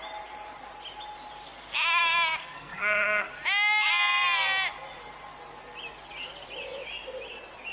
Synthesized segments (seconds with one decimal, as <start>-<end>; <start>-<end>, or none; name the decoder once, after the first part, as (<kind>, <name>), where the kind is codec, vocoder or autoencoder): 2.4-3.3 (codec, SNAC)